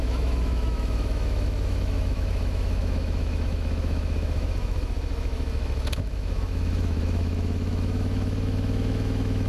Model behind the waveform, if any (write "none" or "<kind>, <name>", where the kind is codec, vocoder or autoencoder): autoencoder, DAC-VAE